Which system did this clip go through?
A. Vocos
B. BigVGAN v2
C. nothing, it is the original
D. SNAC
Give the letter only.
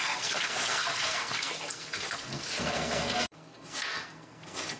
D